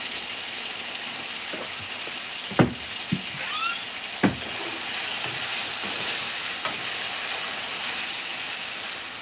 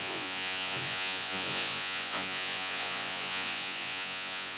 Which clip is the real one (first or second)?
first